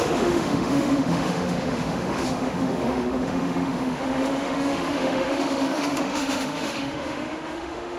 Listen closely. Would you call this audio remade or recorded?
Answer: remade